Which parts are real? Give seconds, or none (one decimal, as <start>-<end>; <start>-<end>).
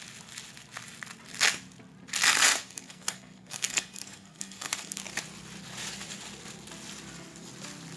0.0-2.5; 5.0-8.0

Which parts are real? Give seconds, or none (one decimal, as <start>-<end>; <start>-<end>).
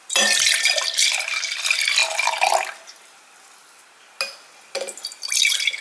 0.0-5.8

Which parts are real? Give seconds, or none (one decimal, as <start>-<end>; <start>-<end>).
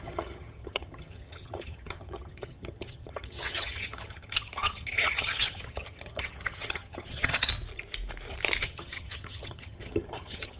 7.5-8.6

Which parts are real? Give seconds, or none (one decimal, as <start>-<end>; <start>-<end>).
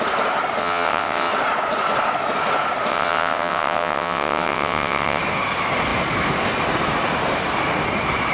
0.0-0.6; 1.3-2.9; 5.2-8.3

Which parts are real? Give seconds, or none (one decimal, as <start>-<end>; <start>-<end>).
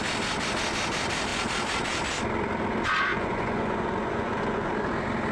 0.0-3.1; 4.7-5.3